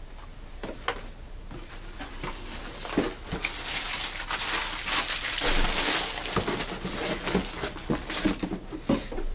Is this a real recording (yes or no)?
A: yes